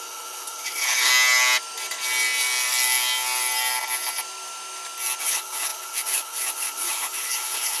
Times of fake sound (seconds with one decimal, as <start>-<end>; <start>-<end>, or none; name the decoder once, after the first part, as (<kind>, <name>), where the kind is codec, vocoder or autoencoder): 0.0-1.1 (codec, HILCodec); 5.2-7.8